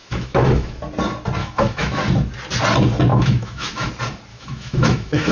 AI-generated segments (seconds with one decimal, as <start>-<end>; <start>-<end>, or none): 0.0-0.8; 1.4-2.0; 3.1-3.9; 4.3-5.3